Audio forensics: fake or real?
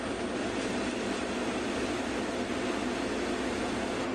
real